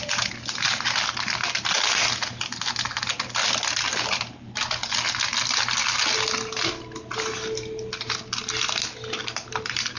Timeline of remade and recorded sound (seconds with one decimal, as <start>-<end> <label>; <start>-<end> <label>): 0.0-10.0 recorded